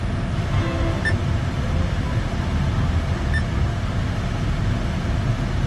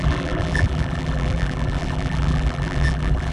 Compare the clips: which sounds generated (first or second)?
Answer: second